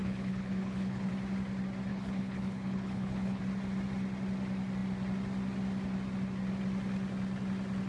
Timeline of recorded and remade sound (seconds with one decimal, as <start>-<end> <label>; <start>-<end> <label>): 0.0-1.1 remade; 1.1-1.9 recorded; 1.9-3.4 remade; 3.4-7.9 recorded

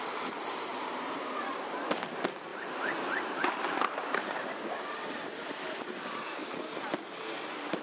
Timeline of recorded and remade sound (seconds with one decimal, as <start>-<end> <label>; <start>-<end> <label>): 0.0-0.7 recorded; 0.7-1.3 remade; 1.3-2.5 recorded; 2.5-5.3 remade; 5.3-7.8 recorded

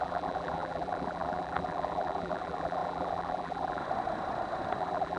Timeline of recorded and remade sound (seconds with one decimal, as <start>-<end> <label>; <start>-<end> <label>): 0.0-3.8 remade; 3.8-4.8 recorded; 4.8-5.2 remade

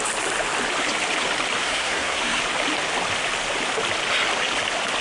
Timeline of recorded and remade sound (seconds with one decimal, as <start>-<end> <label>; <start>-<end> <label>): 0.0-1.6 recorded; 1.6-2.4 remade; 2.4-5.0 recorded

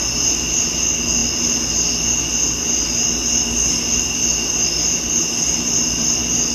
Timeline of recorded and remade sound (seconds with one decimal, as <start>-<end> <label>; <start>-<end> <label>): 0.0-6.5 recorded

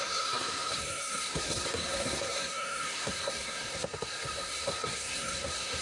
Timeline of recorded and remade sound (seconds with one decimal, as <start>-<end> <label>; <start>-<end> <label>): 0.0-5.8 remade